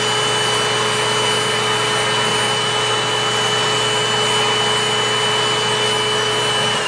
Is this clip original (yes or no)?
yes